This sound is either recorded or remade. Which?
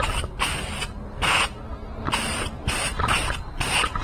recorded